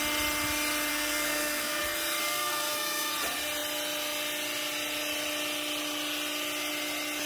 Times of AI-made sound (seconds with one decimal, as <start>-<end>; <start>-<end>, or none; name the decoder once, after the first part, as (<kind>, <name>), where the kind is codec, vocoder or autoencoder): 0.9-1.8 (codec, SNAC); 2.2-3.1